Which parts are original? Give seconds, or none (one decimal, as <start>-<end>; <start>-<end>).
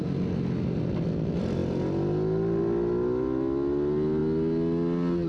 0.0-5.3